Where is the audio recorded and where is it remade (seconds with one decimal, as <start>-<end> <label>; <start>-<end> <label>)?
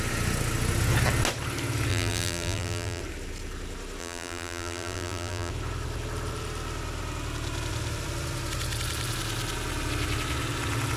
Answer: 0.0-1.9 recorded; 1.9-3.0 remade; 3.0-4.0 recorded; 4.0-5.5 remade; 5.5-11.0 recorded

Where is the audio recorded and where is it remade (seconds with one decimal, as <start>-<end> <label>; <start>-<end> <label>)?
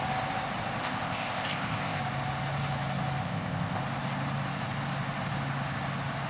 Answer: 0.0-0.8 recorded; 0.8-2.0 remade; 2.0-3.2 recorded; 3.2-3.8 remade; 3.8-6.3 recorded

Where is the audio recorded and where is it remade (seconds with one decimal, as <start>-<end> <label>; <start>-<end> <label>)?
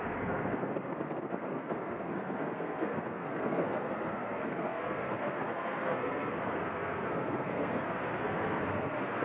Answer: 0.0-9.2 remade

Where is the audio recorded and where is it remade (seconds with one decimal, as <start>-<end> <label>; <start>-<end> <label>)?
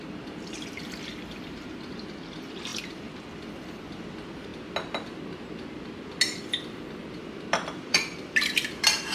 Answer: 0.0-4.5 remade; 4.5-7.1 recorded; 7.1-9.1 remade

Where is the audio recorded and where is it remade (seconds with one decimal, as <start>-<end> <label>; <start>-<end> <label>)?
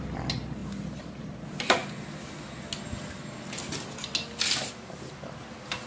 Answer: 0.0-5.9 recorded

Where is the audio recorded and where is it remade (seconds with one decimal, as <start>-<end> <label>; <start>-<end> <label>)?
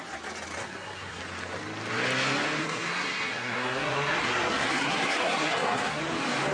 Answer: 0.0-0.6 recorded; 0.6-1.2 remade; 1.2-2.6 recorded; 2.6-6.0 remade; 6.0-6.5 recorded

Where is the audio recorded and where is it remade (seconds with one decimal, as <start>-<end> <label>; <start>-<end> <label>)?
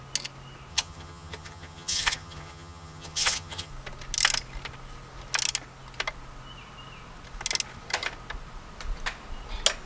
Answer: 0.0-0.7 recorded; 0.7-3.7 remade; 3.7-9.9 recorded